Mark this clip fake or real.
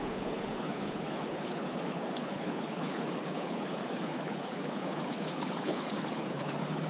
fake